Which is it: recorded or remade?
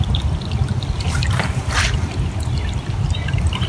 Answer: recorded